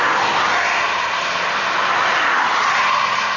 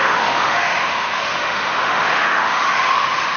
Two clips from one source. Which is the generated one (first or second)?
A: second